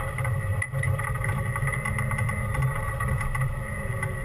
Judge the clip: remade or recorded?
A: recorded